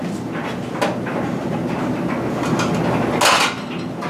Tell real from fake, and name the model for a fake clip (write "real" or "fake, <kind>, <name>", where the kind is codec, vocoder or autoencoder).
real